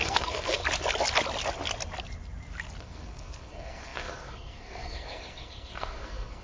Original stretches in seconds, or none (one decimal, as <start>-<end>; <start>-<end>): 0.6-2.8